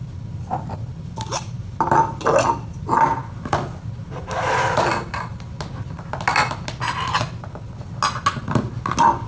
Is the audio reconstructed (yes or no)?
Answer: no